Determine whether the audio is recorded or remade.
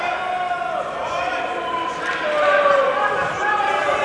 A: remade